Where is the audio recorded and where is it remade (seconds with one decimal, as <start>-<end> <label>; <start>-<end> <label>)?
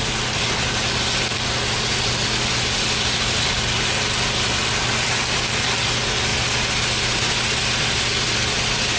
0.0-9.0 recorded